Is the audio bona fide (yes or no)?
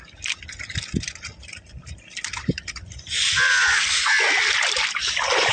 yes